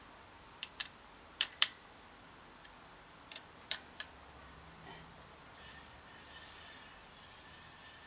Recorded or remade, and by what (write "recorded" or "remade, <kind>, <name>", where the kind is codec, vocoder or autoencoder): remade, vocoder, BigVGAN v2